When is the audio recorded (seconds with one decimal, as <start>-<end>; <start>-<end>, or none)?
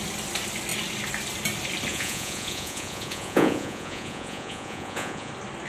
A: 0.0-1.9; 5.3-5.7